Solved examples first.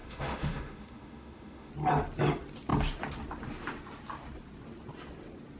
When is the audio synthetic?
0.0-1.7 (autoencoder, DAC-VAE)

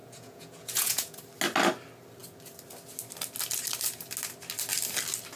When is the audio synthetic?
0.0-1.2 (vocoder, Vocos)

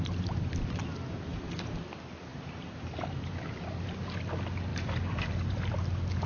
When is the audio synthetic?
1.3-1.8 (vocoder, BigVGAN v2); 2.3-3.7; 4.7-5.6

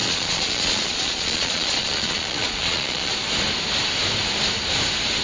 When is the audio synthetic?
0.0-3.1 (vocoder, Vocos)

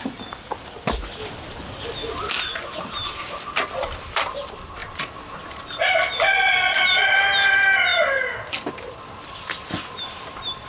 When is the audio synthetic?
none